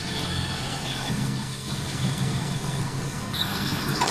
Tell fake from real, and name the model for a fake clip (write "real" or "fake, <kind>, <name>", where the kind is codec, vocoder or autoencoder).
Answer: fake, codec, SNAC